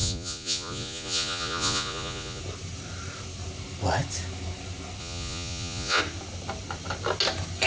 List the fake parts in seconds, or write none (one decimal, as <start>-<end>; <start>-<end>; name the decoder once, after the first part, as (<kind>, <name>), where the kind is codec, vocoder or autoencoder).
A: 0.0-2.4 (vocoder, Vocos); 5.0-6.0